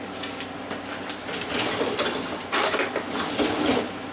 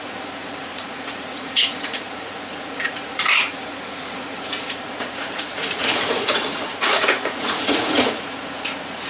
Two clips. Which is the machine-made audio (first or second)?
second